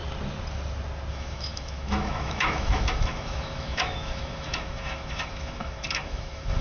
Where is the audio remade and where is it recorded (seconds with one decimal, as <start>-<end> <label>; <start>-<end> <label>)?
0.0-1.1 recorded; 1.1-6.6 remade